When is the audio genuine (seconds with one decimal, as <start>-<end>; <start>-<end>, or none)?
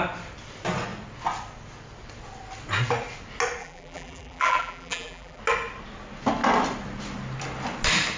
0.0-3.6; 5.4-8.2